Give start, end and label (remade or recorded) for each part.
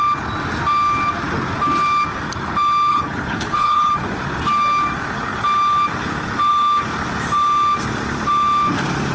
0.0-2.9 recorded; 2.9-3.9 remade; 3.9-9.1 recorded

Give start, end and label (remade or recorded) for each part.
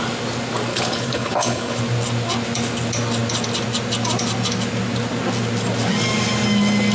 0.0-0.7 recorded; 0.7-1.8 remade; 1.8-6.9 recorded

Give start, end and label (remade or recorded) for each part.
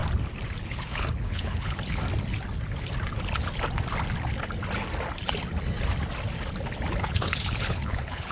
0.0-0.6 recorded; 0.6-2.0 remade; 2.0-7.0 recorded; 7.0-8.3 remade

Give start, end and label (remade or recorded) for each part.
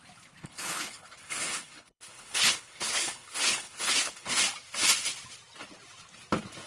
0.0-0.4 recorded; 0.4-4.4 remade; 4.4-6.7 recorded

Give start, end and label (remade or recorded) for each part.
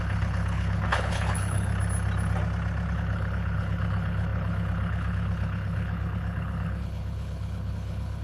0.0-1.7 remade; 1.7-2.9 recorded; 2.9-8.2 remade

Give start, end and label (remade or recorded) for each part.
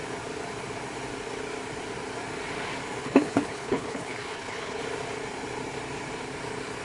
0.0-3.0 recorded; 3.0-4.8 remade; 4.8-6.8 recorded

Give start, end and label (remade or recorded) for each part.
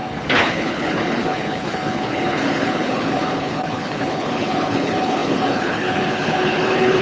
0.0-7.0 remade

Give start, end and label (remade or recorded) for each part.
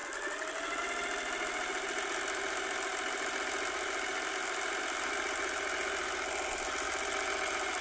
0.0-7.8 recorded